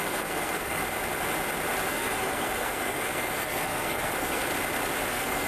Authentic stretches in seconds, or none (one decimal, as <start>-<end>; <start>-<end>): 0.8-1.9; 4.5-5.1